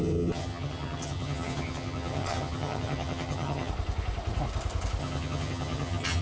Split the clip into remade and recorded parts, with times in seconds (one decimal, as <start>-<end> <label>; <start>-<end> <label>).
0.0-3.7 remade; 3.7-5.0 recorded; 5.0-6.2 remade